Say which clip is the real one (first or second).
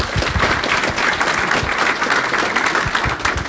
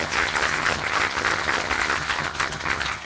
first